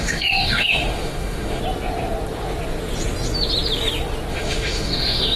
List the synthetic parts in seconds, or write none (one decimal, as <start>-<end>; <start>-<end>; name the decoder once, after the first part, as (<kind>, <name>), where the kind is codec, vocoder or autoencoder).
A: 0.0-1.6 (autoencoder, DAC-VAE); 4.3-5.4